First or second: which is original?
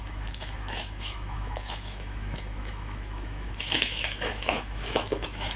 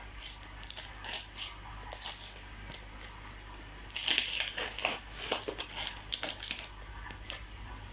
second